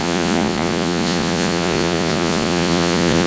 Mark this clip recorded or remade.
remade